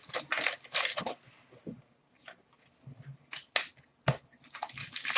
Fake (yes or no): no